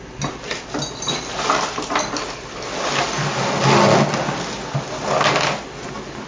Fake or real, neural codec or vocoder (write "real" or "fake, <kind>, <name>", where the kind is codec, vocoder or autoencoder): real